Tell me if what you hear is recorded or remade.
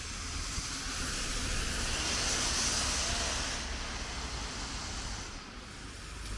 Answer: recorded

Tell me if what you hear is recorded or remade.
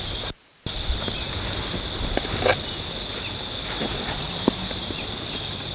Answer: recorded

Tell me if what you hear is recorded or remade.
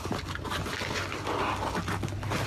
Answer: recorded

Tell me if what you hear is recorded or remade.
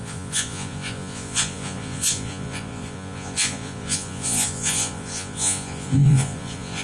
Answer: remade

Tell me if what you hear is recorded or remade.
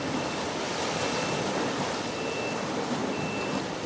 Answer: recorded